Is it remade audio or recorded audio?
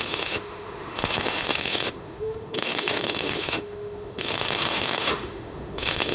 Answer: remade